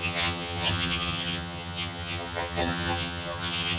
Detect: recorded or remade remade